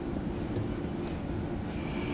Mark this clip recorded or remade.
recorded